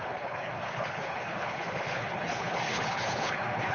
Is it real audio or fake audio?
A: fake